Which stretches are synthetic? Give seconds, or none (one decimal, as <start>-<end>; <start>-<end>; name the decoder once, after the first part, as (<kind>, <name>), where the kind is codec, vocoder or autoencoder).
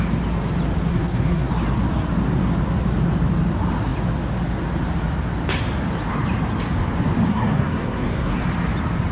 0.9-1.5 (codec, SNAC); 7.3-8.5